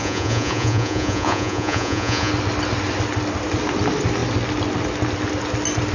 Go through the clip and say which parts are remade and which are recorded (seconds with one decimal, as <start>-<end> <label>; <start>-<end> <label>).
0.0-2.3 remade; 2.3-5.9 recorded